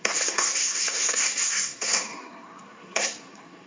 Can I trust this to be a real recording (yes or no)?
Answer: no